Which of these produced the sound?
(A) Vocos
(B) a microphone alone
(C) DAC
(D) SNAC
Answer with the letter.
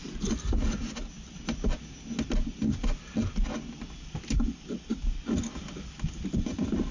B